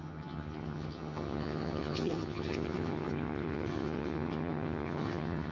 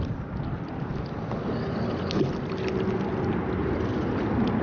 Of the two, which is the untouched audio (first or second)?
second